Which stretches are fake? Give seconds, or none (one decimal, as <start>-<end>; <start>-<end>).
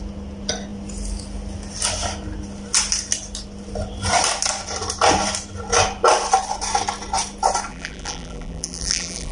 7.7-9.3